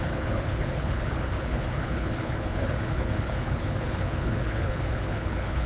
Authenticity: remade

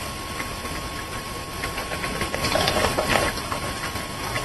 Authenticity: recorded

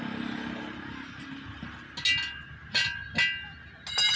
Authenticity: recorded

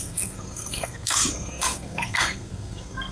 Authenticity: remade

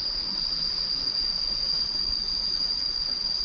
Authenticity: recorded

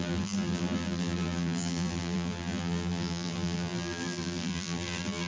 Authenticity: remade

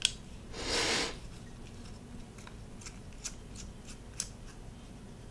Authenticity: recorded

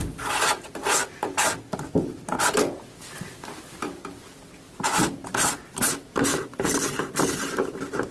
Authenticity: recorded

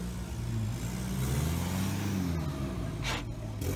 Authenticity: recorded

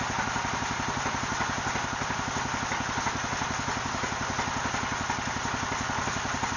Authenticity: recorded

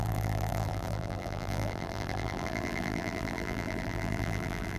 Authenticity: remade